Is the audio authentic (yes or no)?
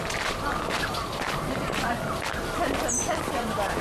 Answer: no